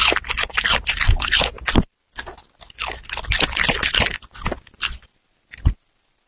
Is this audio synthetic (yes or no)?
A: no